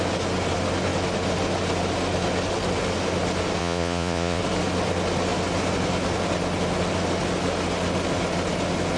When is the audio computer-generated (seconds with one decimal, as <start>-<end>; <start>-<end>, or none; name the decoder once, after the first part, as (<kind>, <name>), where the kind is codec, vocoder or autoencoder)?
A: 3.6-4.4 (vocoder, Vocos)